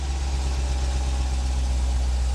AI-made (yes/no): no